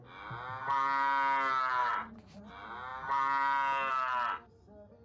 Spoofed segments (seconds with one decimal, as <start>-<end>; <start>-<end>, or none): 1.8-2.5